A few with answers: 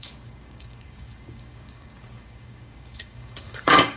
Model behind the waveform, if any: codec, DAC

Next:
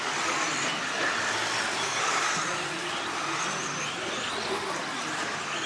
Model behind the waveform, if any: none